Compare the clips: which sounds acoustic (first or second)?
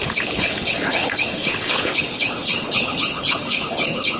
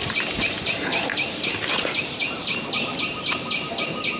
second